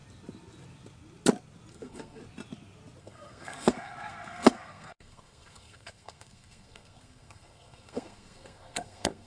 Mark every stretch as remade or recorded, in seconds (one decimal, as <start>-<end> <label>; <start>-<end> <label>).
0.0-1.7 recorded; 1.7-2.2 remade; 2.2-3.0 recorded; 3.0-9.3 remade